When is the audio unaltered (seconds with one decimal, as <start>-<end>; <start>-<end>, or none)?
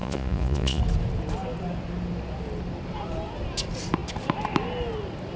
0.8-5.4